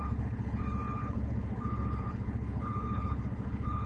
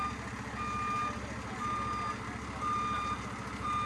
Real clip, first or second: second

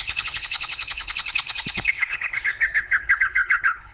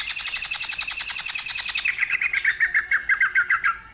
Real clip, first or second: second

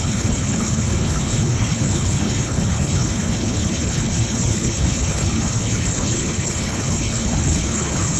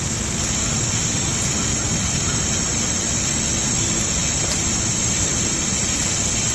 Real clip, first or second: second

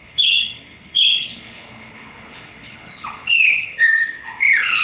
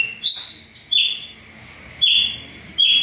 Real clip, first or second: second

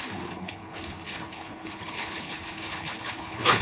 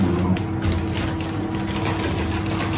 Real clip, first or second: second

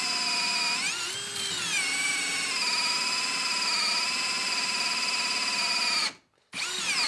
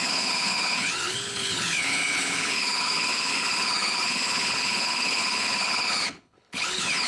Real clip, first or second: first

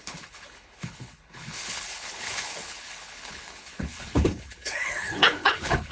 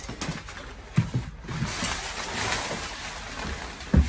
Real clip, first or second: second